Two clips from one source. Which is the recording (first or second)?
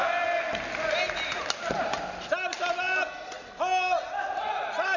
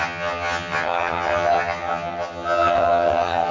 first